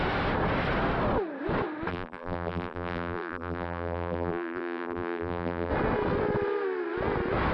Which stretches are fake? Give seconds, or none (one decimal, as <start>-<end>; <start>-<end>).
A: 1.9-5.7